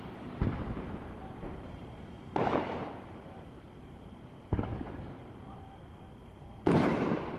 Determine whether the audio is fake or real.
fake